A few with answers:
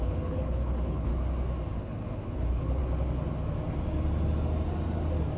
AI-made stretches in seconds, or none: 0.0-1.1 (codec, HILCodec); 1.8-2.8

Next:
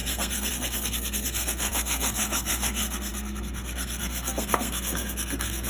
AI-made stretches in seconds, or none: 0.0-5.7 (codec, SNAC)

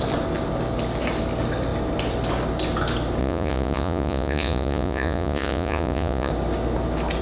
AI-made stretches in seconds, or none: 3.2-6.3 (vocoder, Vocos)

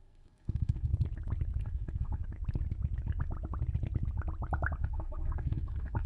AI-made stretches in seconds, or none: 0.0-0.9 (codec, SNAC); 1.6-2.2; 4.8-6.1

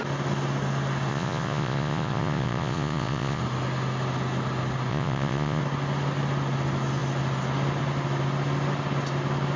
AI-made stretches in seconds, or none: 1.1-3.4 (vocoder, Vocos); 4.9-5.6

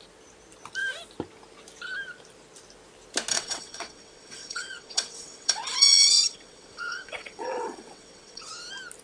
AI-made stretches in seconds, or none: 3.3-8.5 (vocoder, WaveNeXt)

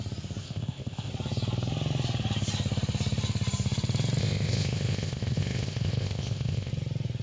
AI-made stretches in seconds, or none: 0.4-1.1 (codec, ZipCodec); 4.2-6.7